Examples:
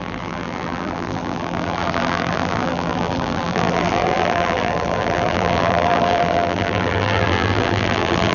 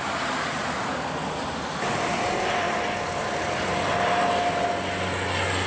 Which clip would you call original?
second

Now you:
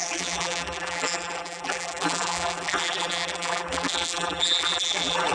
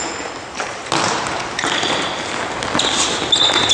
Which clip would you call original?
second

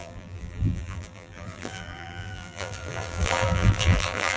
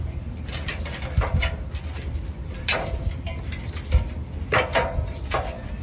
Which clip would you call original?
second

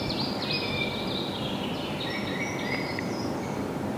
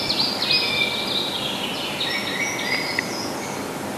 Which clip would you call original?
second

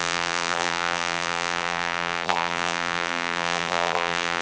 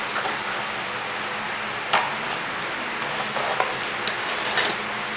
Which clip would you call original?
second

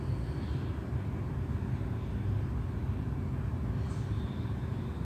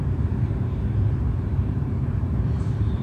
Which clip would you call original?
first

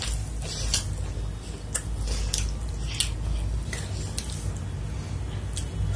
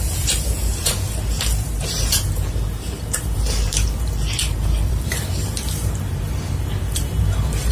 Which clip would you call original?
first